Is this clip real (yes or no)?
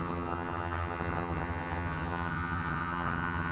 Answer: no